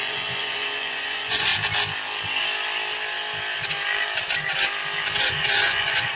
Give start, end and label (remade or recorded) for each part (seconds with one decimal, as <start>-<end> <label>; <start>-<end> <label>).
0.0-1.5 remade; 1.5-5.2 recorded; 5.2-6.2 remade

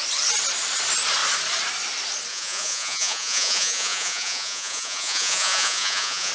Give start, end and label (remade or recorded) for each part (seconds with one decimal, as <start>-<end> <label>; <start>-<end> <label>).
0.0-2.3 recorded; 2.3-6.3 remade

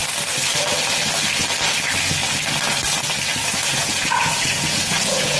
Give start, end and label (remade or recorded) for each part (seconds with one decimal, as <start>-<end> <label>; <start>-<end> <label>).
0.0-3.4 recorded; 3.4-5.4 remade

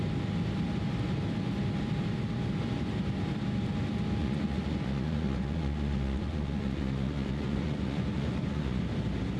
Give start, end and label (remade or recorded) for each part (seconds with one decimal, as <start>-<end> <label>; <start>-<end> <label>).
0.0-4.2 recorded; 4.2-8.8 remade; 8.8-9.4 recorded

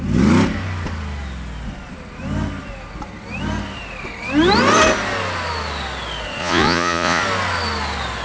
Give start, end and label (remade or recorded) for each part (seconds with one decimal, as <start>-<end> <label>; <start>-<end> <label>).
0.0-6.4 recorded; 6.4-7.2 remade; 7.2-8.2 recorded